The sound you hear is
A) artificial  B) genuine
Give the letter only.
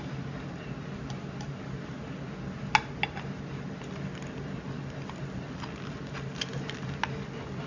B